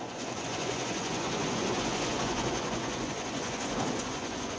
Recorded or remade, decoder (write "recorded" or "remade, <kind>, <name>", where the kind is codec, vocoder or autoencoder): remade, vocoder, Vocos